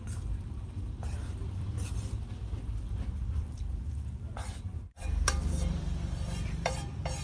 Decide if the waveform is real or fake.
fake